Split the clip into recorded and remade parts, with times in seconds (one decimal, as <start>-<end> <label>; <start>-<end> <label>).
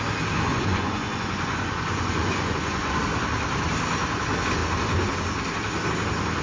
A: 0.0-0.5 recorded; 0.5-3.0 remade; 3.0-6.4 recorded